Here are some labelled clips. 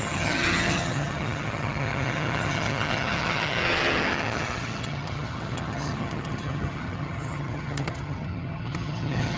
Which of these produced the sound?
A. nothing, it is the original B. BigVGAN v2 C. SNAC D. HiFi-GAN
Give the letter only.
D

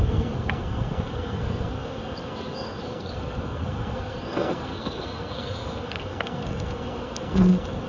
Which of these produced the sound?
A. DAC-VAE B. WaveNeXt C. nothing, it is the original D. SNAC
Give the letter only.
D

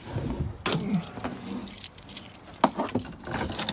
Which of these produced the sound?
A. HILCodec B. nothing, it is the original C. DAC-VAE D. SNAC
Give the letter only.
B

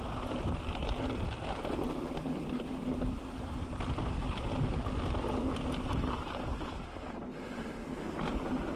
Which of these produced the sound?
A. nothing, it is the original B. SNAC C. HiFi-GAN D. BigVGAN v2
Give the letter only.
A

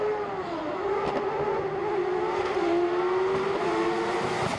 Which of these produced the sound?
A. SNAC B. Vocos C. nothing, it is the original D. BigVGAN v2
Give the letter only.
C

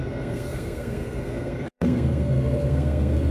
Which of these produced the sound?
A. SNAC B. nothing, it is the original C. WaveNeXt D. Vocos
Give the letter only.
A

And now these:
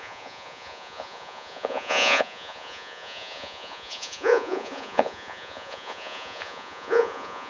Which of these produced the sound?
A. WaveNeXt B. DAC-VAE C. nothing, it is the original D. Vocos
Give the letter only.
D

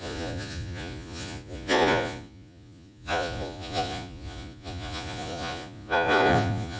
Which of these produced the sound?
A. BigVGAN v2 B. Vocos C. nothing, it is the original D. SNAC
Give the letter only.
B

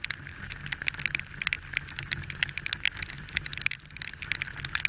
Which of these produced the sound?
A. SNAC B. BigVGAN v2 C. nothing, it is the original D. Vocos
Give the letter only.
C